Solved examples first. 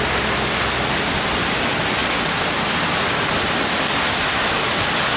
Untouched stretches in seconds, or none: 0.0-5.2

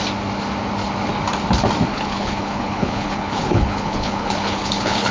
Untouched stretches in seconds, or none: 0.0-1.9

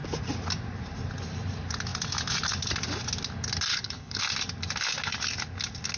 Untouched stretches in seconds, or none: 0.0-3.7; 4.2-6.0